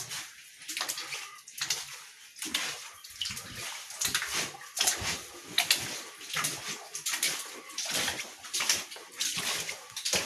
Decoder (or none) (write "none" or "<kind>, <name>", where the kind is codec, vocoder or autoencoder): none